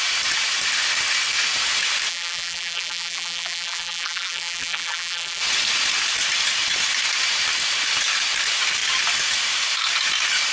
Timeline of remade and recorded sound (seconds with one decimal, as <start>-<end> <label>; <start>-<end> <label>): 0.0-2.1 recorded; 2.1-5.4 remade; 5.4-10.5 recorded